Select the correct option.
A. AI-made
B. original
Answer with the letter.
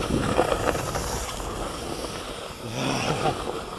B